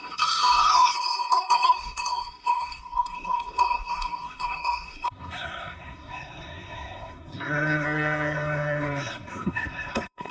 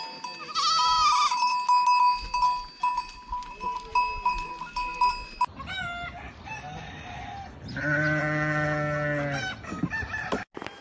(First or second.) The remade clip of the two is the first